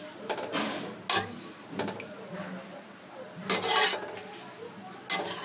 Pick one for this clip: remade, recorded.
recorded